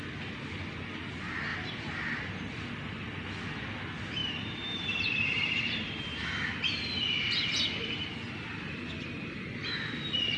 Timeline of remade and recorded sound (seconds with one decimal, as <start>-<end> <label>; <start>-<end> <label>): 0.0-1.5 recorded; 1.5-2.7 remade; 2.7-4.2 recorded; 4.2-6.3 remade; 6.3-10.4 recorded